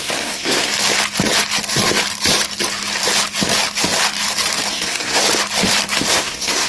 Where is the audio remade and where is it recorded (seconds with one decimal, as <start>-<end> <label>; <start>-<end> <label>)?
0.0-0.7 remade; 0.7-4.7 recorded; 4.7-5.2 remade; 5.2-6.1 recorded; 6.1-6.7 remade